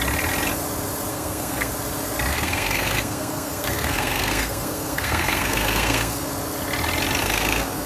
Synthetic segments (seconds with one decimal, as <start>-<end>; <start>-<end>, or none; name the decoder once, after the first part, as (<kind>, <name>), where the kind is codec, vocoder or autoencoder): 1.1-1.7 (codec, SNAC); 2.3-6.3; 7.2-7.9